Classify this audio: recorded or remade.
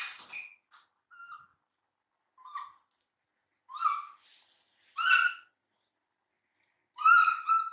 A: recorded